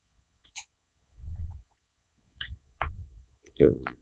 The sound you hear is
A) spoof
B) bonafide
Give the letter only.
A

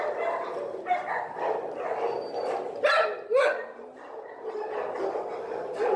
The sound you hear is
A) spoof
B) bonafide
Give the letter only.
B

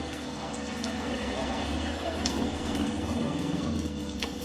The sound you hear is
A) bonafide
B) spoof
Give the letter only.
B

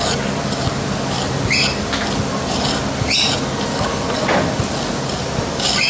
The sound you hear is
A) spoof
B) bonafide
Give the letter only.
B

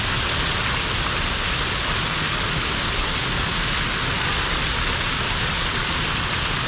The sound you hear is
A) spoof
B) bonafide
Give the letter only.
B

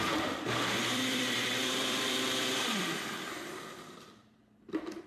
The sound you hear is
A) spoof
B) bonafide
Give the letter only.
A